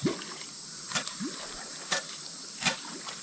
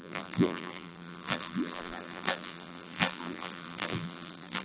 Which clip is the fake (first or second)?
second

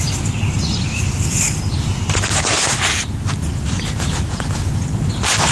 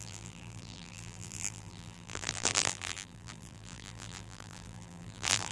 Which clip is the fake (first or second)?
second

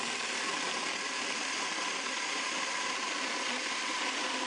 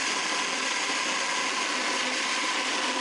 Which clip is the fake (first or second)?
first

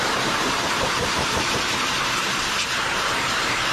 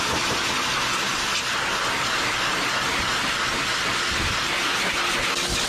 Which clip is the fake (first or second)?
first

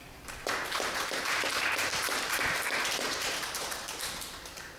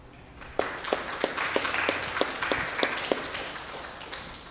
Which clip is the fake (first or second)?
first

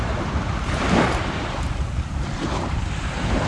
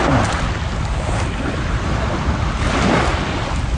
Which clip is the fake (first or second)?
first